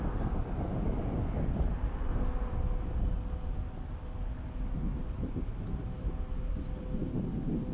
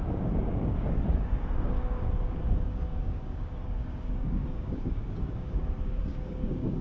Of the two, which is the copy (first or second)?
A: second